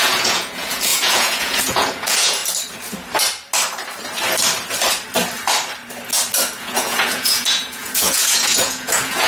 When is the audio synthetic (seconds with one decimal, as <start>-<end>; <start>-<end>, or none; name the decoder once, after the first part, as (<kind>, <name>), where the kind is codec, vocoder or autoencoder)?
0.0-2.4 (vocoder, Vocos); 6.6-9.3